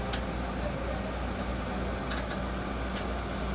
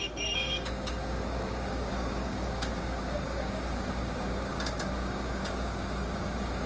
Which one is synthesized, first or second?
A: second